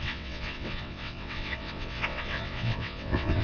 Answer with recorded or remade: remade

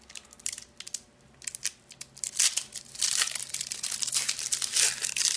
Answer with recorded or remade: recorded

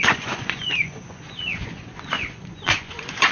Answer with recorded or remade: remade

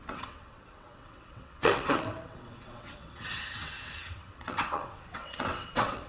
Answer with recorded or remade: remade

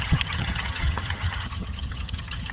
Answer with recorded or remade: remade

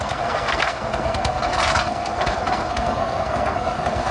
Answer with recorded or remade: remade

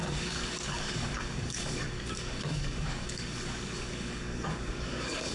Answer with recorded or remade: remade